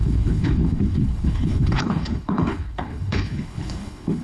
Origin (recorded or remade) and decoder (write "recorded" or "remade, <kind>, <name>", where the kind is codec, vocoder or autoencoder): remade, codec, HILCodec